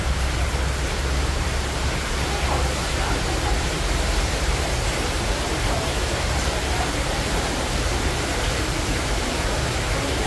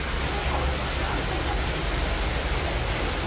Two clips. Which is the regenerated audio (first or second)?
first